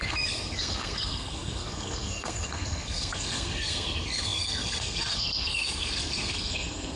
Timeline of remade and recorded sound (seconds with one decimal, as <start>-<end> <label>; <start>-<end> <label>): 0.0-7.0 remade